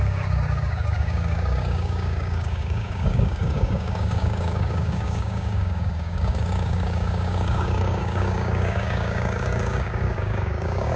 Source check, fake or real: fake